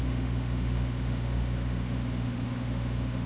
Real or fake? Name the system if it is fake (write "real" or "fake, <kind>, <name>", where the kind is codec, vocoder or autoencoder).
fake, autoencoder, DAC-VAE